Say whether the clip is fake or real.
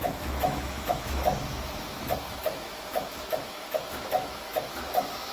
fake